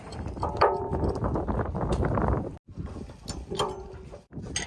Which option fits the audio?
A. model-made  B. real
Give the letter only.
B